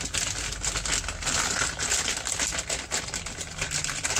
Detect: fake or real real